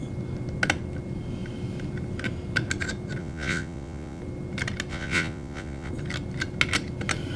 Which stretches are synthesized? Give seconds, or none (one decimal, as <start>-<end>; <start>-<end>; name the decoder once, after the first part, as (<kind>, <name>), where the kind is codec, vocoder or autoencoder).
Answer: 3.2-4.2 (vocoder, Vocos); 4.9-5.9